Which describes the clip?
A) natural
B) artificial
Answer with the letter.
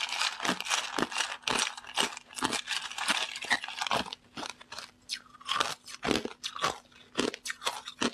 A